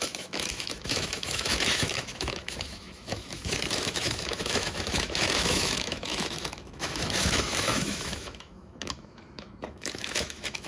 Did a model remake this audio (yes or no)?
yes